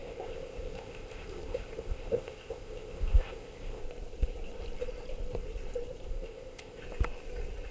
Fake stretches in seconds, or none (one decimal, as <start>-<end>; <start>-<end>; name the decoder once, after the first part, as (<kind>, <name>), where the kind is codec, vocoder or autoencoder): 0.0-3.8 (codec, ZipCodec); 6.1-6.8